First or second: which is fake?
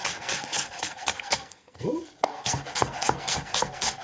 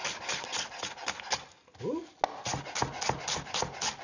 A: first